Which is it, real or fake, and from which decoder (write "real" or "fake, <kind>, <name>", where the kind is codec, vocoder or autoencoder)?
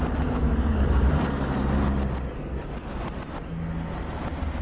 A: real